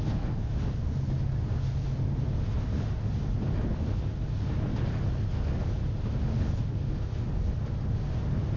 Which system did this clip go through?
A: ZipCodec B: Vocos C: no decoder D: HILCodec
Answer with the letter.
C